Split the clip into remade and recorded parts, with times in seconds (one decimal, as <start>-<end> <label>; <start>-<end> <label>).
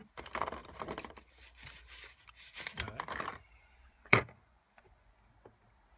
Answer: 0.0-3.6 recorded; 3.6-5.2 remade; 5.2-6.0 recorded